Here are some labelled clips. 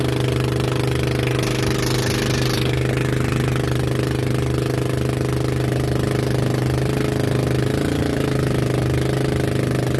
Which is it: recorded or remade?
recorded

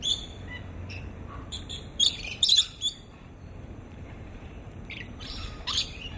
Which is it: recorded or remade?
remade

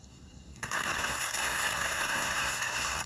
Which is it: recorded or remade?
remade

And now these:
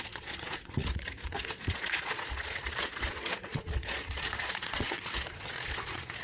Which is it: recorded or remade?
remade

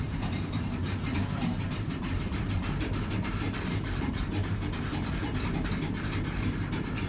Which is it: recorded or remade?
remade